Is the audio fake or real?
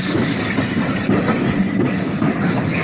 real